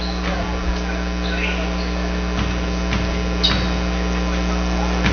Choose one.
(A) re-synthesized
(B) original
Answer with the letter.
B